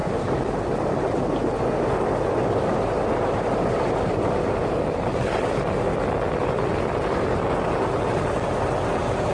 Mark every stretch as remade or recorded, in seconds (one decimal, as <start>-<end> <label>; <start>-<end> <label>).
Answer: 0.0-9.3 recorded